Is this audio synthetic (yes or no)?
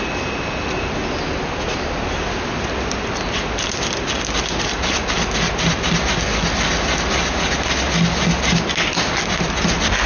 no